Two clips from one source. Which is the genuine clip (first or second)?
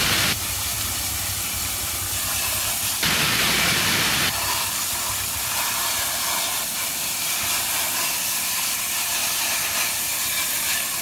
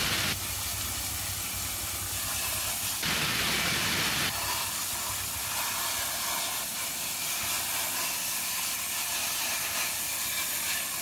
second